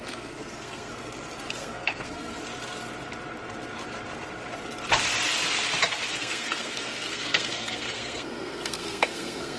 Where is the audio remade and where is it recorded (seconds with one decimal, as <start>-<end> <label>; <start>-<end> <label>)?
0.0-0.9 remade; 0.9-1.5 recorded; 1.5-2.4 remade; 2.4-6.1 recorded; 6.1-9.6 remade